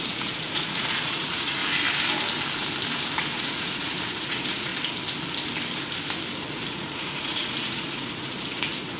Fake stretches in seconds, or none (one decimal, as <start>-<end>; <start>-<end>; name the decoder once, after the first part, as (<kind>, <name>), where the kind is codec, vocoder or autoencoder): 0.0-1.6 (vocoder, Vocos); 3.2-4.7; 6.5-9.0